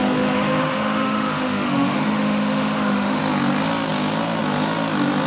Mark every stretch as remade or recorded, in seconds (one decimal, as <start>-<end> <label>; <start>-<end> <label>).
0.0-3.2 remade; 3.2-5.3 recorded